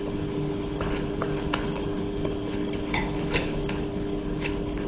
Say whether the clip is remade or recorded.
remade